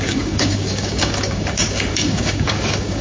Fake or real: fake